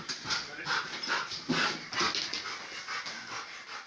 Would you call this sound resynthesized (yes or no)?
no